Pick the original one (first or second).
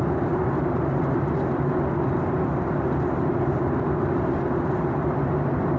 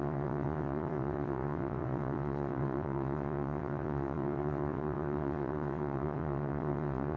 first